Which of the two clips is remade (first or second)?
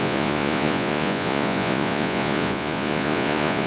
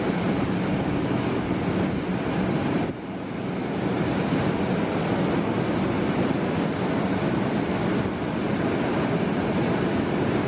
first